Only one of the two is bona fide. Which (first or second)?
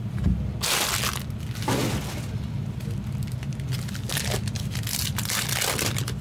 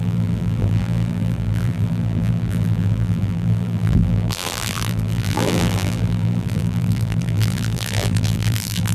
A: first